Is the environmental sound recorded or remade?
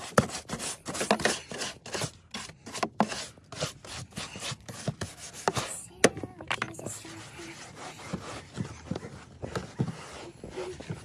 recorded